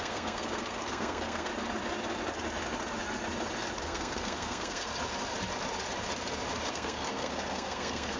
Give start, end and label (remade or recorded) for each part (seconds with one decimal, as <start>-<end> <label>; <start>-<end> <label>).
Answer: 0.0-1.5 remade; 1.5-3.8 recorded; 3.8-4.9 remade; 4.9-6.7 recorded; 6.7-8.2 remade